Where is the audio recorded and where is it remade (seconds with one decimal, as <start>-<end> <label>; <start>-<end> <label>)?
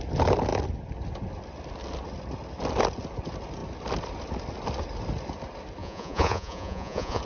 0.0-5.8 recorded; 5.8-7.2 remade